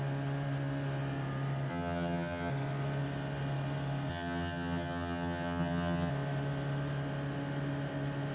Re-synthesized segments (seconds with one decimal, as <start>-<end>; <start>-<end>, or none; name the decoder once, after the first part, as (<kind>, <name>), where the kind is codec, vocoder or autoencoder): 1.7-2.5 (vocoder, HiFi-GAN); 4.1-6.1